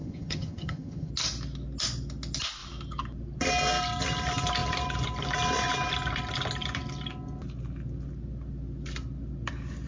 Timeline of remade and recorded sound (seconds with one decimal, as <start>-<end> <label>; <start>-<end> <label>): 0.0-1.1 remade; 1.1-9.9 recorded